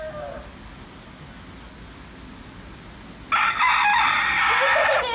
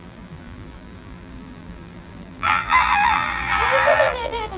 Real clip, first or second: first